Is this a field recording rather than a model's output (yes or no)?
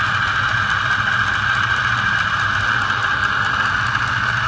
yes